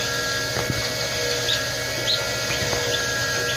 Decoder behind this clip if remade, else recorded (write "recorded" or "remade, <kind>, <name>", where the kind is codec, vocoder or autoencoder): recorded